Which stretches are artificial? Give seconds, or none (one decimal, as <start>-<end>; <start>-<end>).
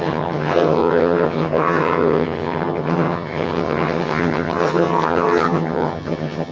0.0-6.5